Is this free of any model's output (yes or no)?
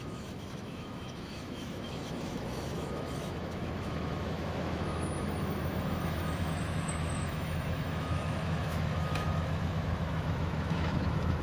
no